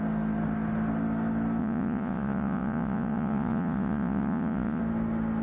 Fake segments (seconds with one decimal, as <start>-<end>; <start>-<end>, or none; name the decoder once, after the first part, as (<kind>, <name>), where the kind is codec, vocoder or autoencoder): 1.6-4.8 (vocoder, Vocos)